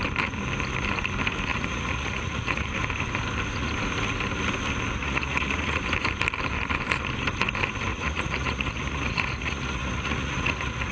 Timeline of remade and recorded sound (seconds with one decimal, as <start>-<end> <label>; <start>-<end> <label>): 0.0-1.5 recorded; 1.5-2.7 remade; 2.7-5.0 recorded; 5.0-5.8 remade; 5.8-7.9 recorded; 7.9-10.9 remade